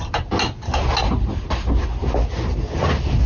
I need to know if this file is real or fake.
real